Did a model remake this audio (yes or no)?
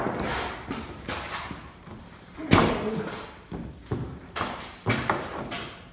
yes